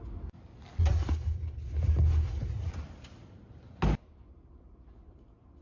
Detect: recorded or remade recorded